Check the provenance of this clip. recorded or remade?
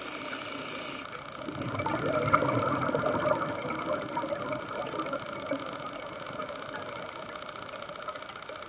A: recorded